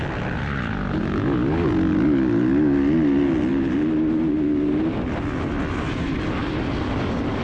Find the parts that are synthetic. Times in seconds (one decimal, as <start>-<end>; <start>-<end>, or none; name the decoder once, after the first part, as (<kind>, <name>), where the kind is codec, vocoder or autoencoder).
none